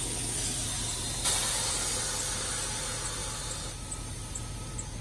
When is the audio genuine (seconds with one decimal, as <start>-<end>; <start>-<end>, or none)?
0.0-5.0